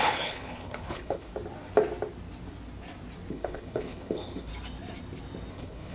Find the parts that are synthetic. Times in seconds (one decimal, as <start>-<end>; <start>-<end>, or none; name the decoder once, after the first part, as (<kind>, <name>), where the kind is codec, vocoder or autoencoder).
0.0-1.3 (codec, HILCodec); 3.3-4.5; 5.5-5.9